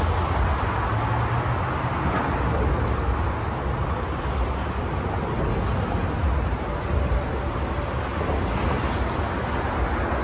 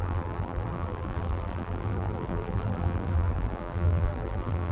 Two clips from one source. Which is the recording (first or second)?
first